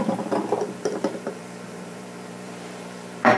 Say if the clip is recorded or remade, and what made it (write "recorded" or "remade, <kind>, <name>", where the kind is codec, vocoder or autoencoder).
remade, vocoder, BigVGAN v2